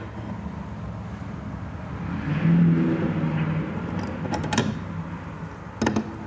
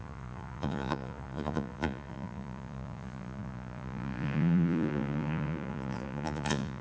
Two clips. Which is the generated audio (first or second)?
second